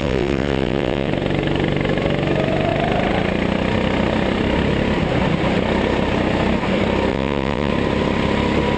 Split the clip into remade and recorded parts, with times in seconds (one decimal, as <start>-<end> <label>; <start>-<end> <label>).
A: 0.0-1.1 remade; 1.1-7.1 recorded; 7.1-7.7 remade; 7.7-8.8 recorded